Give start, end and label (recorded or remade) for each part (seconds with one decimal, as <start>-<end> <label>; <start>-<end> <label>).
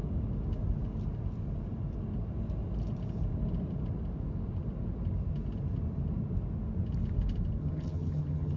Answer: 0.0-7.6 recorded; 7.6-8.6 remade